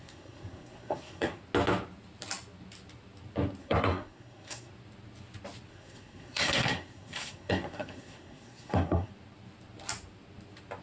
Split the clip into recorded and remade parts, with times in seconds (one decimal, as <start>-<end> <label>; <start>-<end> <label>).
0.0-1.4 remade; 1.4-3.6 recorded; 3.6-4.7 remade; 4.7-5.7 recorded; 5.7-9.1 remade; 9.1-10.8 recorded